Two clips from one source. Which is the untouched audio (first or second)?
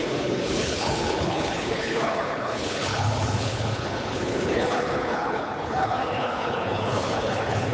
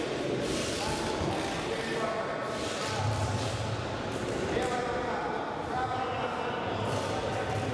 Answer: second